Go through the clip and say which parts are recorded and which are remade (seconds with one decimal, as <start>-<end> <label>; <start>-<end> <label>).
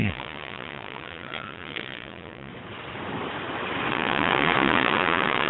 0.0-2.5 remade; 2.5-3.9 recorded; 3.9-5.5 remade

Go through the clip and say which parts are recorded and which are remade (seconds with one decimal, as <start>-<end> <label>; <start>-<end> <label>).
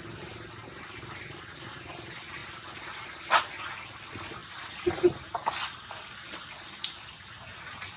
0.0-8.0 recorded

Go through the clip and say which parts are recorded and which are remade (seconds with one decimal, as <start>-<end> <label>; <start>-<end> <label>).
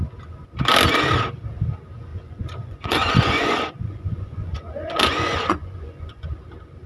0.0-2.1 recorded; 2.1-6.2 remade; 6.2-6.9 recorded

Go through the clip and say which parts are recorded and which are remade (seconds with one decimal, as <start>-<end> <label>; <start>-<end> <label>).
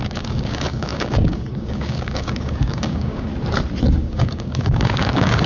0.0-3.3 remade; 3.3-4.0 recorded; 4.0-5.5 remade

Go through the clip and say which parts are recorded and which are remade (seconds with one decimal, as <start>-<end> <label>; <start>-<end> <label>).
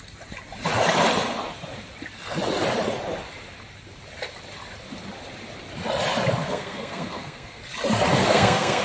0.0-6.4 recorded; 6.4-7.6 remade; 7.6-8.2 recorded; 8.2-8.8 remade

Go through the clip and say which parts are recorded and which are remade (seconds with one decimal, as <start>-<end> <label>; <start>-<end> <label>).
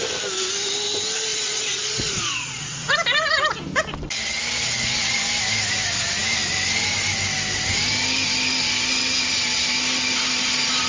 0.0-1.3 recorded; 1.3-2.9 remade; 2.9-10.9 recorded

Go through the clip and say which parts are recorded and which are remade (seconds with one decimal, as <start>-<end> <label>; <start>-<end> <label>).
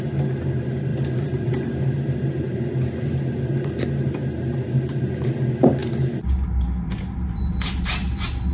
0.0-0.9 recorded; 0.9-1.5 remade; 1.5-8.5 recorded